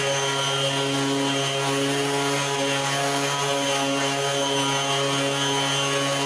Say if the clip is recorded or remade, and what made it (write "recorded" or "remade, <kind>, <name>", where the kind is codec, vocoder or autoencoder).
recorded